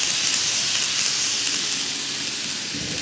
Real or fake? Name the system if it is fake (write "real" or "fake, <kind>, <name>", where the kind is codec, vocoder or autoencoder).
real